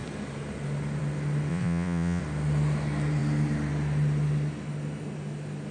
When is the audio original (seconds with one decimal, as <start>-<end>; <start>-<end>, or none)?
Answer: 0.0-1.5; 2.2-5.7